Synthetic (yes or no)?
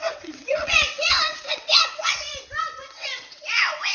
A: yes